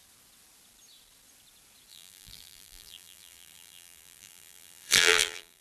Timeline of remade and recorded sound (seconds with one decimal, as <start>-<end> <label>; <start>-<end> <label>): 0.0-1.9 recorded; 1.9-5.6 remade